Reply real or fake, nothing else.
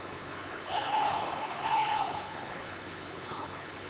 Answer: fake